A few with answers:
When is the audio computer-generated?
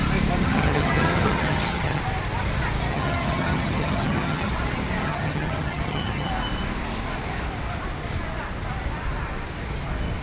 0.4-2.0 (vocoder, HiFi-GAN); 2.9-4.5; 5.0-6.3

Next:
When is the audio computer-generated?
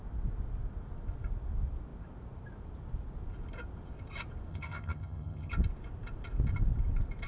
4.5-5.5 (vocoder, HiFi-GAN)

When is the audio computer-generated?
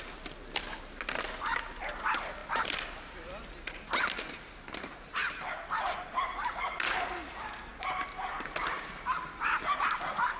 none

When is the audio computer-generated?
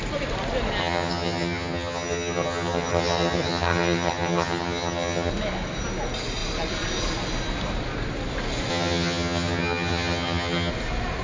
0.8-5.3 (vocoder, HiFi-GAN); 8.7-10.7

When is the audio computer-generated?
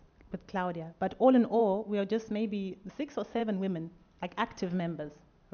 none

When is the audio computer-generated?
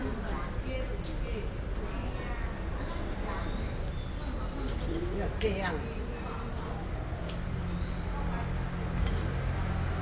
none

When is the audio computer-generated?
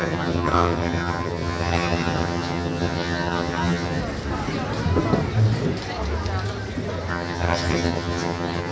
0.0-4.0 (vocoder, HiFi-GAN); 7.1-8.7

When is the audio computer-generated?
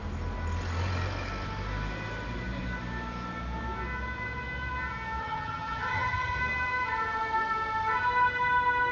5.2-6.4 (vocoder, HiFi-GAN)